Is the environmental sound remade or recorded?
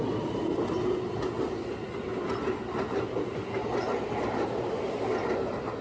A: recorded